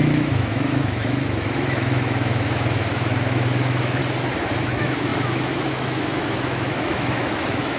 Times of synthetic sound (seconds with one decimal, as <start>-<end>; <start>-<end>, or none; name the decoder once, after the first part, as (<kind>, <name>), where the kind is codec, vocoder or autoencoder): 0.0-4.0 (autoencoder, DAC-VAE); 4.6-7.8